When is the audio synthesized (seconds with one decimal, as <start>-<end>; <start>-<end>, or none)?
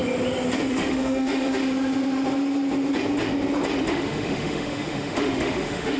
0.7-1.6; 3.9-6.0